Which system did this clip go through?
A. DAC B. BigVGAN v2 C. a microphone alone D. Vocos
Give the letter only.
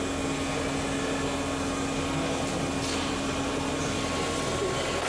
C